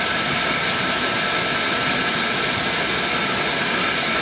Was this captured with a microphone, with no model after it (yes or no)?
yes